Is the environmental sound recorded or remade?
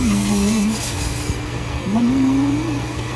remade